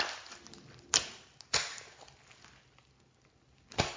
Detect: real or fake real